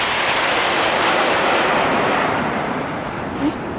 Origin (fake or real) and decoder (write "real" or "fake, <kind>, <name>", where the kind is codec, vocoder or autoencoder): real